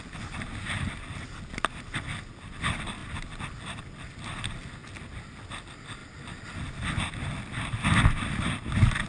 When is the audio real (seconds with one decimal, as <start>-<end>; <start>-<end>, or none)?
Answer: 0.0-9.1